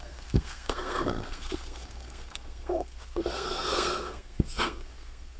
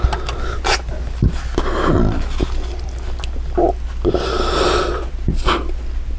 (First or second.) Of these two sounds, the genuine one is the second